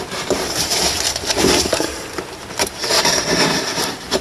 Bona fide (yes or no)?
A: no